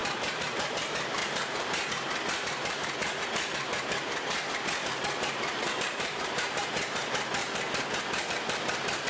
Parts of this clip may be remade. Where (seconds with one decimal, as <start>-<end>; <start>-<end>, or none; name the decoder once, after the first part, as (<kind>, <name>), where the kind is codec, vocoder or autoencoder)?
0.0-7.4 (vocoder, BigVGAN v2); 8.3-9.1